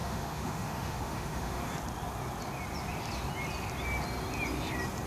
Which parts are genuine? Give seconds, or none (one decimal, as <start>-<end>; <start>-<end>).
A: 1.6-5.1